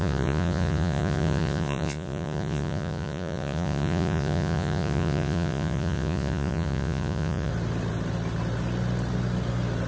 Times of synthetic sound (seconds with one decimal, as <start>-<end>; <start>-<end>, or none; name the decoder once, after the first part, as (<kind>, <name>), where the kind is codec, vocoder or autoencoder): 0.0-7.5 (vocoder, Vocos)